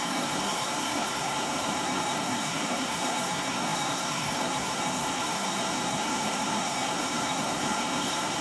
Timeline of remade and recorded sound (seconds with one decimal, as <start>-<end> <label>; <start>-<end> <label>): 0.0-8.4 remade